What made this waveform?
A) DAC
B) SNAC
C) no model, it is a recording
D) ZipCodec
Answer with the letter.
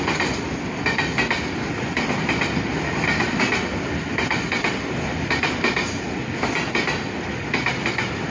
C